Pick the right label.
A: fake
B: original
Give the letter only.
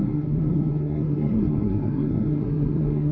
A